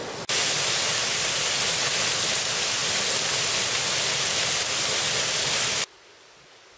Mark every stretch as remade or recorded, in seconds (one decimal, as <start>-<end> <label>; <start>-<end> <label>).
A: 0.0-6.8 recorded